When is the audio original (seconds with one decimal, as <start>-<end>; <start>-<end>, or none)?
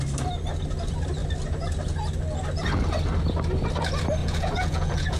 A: 0.0-4.2